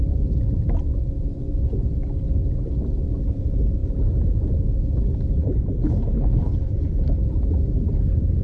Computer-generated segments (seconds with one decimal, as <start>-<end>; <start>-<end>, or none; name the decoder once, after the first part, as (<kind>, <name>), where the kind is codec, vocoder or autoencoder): 5.4-7.2 (codec, HILCodec)